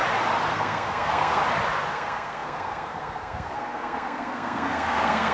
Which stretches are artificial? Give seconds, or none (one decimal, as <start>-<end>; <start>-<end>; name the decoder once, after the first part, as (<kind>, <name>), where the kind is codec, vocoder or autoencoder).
0.5-1.4 (codec, SNAC); 1.9-5.3